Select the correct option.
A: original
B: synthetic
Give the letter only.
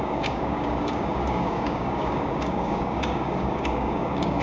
B